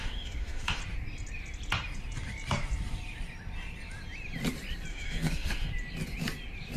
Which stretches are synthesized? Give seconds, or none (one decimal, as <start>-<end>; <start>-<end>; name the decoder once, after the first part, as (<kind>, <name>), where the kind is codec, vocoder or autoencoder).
0.0-0.8 (autoencoder, DAC-VAE); 4.9-5.7